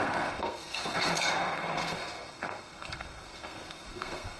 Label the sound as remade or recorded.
remade